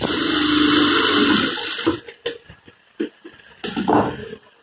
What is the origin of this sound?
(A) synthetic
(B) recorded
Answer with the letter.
B